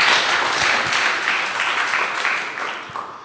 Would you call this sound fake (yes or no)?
no